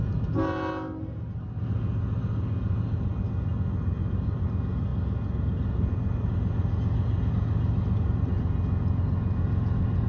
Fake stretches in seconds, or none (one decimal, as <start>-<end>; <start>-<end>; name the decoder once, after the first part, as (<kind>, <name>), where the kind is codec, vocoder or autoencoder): none